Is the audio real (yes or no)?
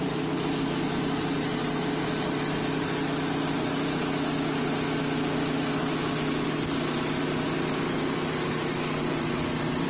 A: yes